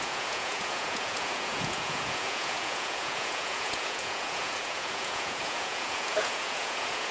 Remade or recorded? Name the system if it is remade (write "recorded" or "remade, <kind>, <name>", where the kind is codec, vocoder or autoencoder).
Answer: remade, vocoder, Vocos